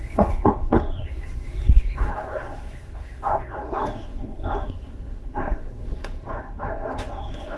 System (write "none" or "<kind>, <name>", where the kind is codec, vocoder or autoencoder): codec, SNAC